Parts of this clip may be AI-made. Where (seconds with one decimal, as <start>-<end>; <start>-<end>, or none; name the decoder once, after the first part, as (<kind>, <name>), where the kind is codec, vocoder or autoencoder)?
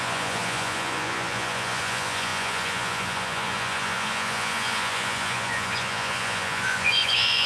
0.0-7.5 (vocoder, Vocos)